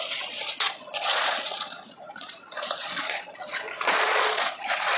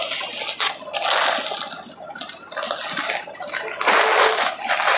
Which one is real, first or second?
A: second